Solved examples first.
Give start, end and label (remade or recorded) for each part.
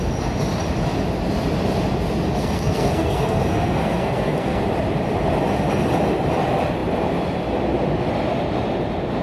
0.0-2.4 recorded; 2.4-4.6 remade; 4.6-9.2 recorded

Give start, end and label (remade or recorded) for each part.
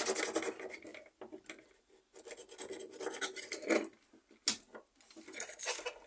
0.0-6.1 recorded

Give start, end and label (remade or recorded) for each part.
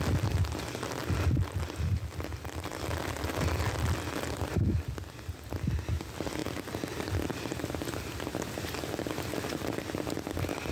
0.0-10.7 recorded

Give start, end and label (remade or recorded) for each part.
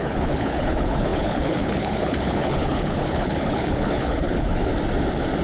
0.0-4.7 remade; 4.7-5.4 recorded